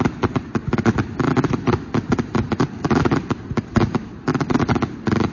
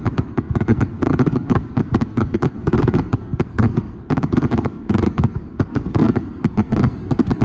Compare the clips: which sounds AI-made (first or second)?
second